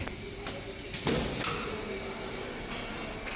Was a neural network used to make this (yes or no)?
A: no